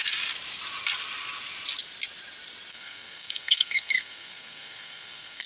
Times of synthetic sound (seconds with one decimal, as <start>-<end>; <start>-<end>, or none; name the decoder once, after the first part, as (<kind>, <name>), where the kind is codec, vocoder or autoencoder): 2.7-5.5 (codec, SNAC)